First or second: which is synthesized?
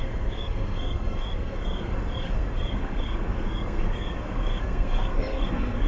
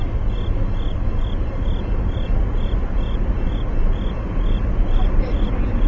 first